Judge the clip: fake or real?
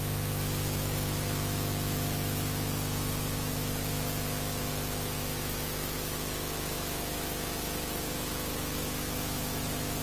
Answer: fake